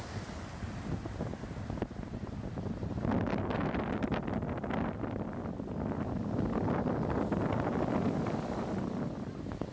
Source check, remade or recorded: recorded